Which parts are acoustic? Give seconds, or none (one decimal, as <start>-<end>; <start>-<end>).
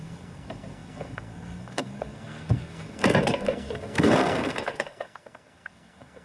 none